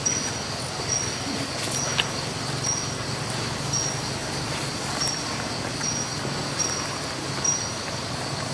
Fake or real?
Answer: real